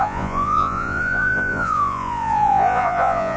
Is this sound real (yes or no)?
no